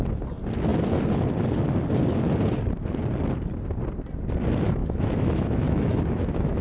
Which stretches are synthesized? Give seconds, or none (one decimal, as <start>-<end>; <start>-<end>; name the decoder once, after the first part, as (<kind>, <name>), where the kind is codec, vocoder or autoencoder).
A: 4.8-6.6 (autoencoder, DAC-VAE)